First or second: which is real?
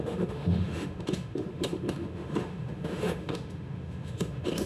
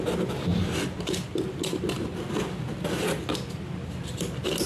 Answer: second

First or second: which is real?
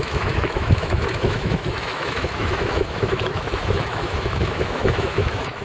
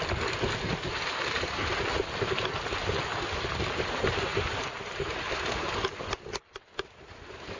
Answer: second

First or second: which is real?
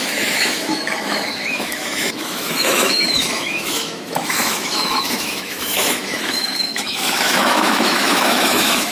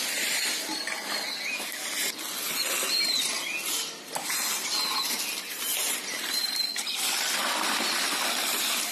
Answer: second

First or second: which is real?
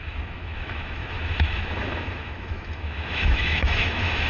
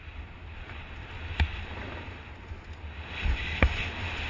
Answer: second